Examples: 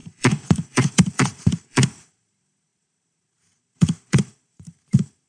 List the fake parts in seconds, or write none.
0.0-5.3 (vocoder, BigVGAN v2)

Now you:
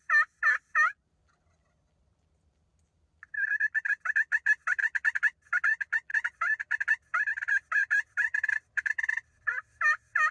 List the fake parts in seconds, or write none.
6.1-6.6 (vocoder, BigVGAN v2); 7.8-8.9

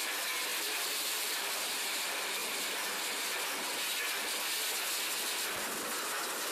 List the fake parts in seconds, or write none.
0.0-2.4 (vocoder, BigVGAN v2)

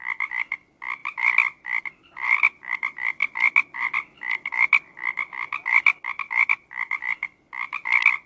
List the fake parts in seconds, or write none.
0.0-3.2 (vocoder, BigVGAN v2); 6.5-8.3